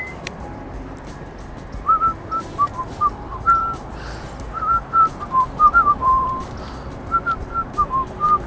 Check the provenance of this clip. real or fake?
fake